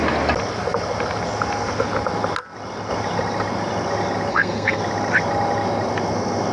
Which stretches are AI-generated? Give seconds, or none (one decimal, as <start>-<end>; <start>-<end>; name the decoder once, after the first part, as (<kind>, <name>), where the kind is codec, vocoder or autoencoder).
4.3-4.8 (codec, SNAC)